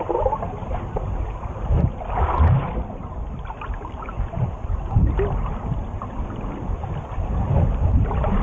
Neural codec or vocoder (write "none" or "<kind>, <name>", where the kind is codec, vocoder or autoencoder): none